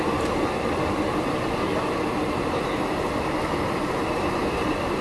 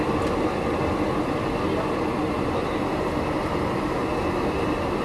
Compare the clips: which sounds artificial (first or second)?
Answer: first